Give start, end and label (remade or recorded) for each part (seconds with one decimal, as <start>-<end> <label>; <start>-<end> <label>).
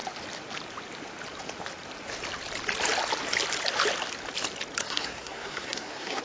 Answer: 0.0-4.8 recorded; 4.8-6.2 remade